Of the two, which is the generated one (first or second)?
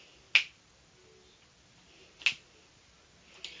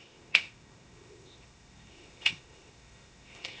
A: second